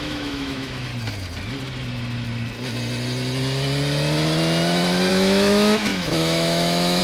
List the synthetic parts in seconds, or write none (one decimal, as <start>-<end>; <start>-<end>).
0.0-0.9; 5.1-7.0